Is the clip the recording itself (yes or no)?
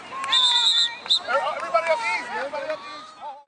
yes